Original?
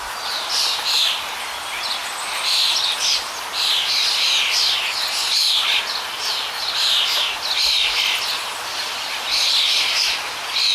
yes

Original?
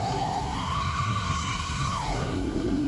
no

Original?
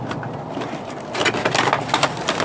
yes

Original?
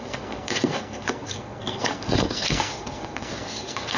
no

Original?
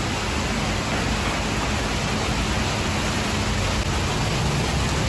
yes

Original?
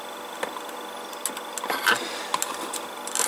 yes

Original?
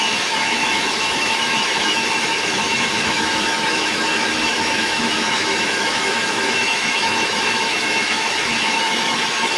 no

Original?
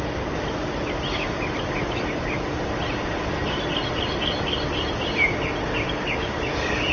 yes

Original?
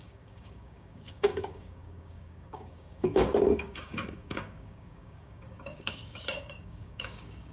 no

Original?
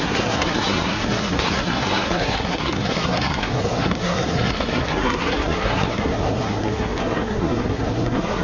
no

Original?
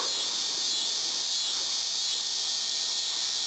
yes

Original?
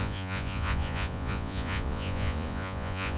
no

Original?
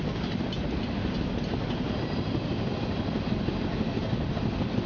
yes